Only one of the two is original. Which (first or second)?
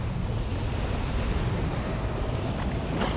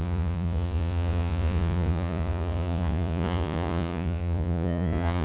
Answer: first